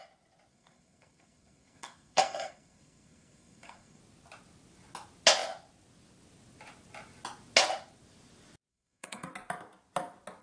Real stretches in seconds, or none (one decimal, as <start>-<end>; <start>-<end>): 0.0-0.5; 4.0-8.7; 9.3-10.4